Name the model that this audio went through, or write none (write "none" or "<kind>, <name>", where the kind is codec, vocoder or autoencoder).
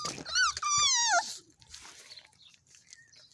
none